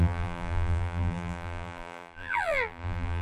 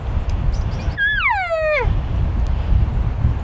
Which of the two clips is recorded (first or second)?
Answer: second